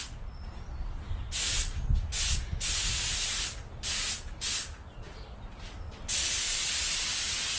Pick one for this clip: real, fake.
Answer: real